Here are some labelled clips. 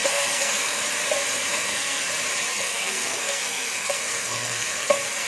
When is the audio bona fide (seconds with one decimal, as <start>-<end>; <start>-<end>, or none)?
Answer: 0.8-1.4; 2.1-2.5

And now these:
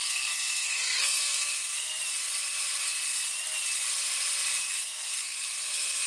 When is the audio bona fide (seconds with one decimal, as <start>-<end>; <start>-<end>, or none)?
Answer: 1.9-4.7

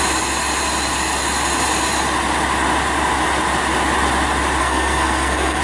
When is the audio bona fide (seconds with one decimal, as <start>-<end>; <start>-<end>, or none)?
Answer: 0.0-4.6

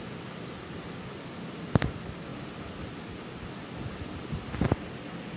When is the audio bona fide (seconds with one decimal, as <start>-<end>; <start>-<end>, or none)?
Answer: 0.0-5.4

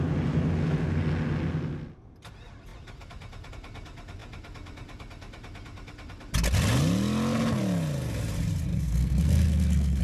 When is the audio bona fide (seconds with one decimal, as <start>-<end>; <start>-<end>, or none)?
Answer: 0.0-8.7